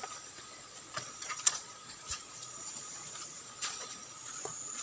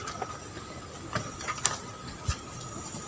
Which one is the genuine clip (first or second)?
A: second